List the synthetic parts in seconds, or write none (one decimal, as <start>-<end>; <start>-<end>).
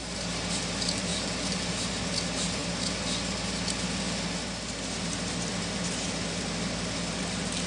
1.1-1.9